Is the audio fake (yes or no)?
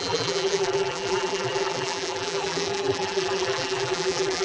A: yes